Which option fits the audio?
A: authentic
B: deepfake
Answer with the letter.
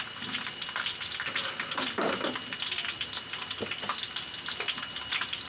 A